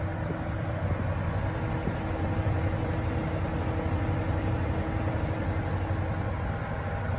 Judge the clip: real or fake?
real